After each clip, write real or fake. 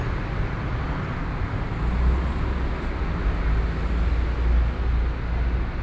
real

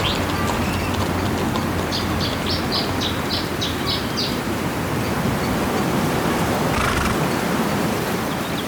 real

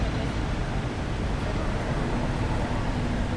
real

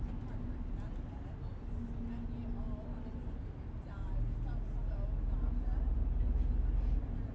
real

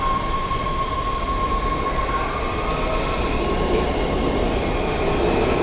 real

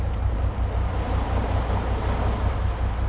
real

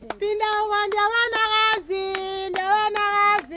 real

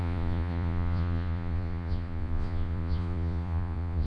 fake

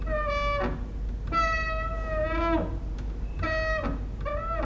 real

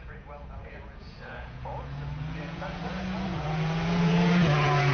fake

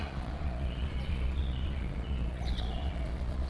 fake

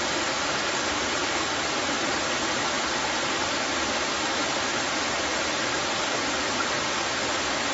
real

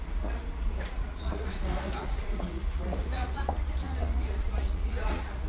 fake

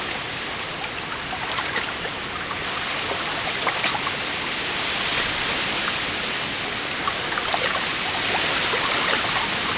real